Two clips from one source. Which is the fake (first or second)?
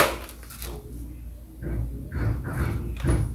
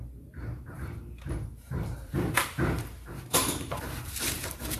second